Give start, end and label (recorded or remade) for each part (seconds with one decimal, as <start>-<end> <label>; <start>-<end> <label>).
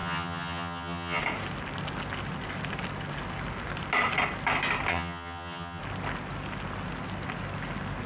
0.0-1.2 remade; 1.2-4.9 recorded; 4.9-5.8 remade; 5.8-8.1 recorded